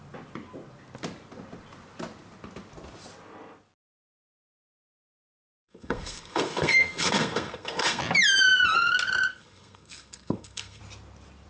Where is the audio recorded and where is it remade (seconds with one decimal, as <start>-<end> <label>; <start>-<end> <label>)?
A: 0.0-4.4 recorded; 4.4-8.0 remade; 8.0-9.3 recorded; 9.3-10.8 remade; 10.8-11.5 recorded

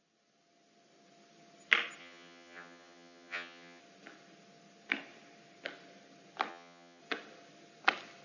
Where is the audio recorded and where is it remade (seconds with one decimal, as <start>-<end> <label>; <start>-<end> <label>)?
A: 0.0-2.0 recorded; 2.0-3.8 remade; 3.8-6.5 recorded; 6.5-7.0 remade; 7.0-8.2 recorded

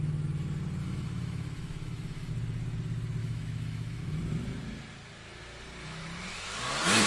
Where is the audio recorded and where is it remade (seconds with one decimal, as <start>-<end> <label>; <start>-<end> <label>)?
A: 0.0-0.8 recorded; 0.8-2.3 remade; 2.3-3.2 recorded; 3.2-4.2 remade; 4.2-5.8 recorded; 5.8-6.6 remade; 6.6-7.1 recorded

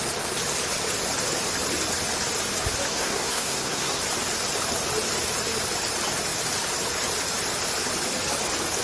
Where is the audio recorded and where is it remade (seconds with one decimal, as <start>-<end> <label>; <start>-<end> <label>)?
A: 0.0-2.9 recorded; 2.9-4.0 remade; 4.0-8.8 recorded

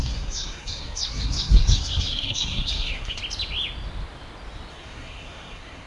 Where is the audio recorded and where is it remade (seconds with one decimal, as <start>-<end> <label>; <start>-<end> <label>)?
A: 0.0-3.2 remade; 3.2-4.7 recorded; 4.7-5.9 remade